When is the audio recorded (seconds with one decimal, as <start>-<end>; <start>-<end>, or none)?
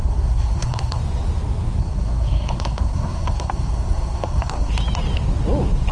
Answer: 1.0-1.8; 4.7-5.9